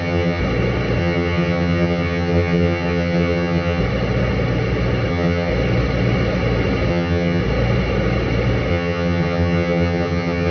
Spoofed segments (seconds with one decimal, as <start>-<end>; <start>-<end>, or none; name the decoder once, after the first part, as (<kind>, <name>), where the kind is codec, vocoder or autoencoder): 0.0-0.4 (vocoder, HiFi-GAN); 1.0-3.8; 5.1-5.5; 6.9-7.4; 8.7-10.5